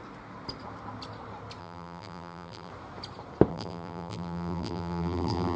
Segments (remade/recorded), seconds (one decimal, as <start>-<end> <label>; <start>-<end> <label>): 0.0-1.6 recorded; 1.6-2.7 remade; 2.7-3.5 recorded; 3.5-5.6 remade